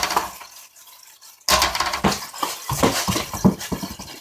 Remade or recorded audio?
recorded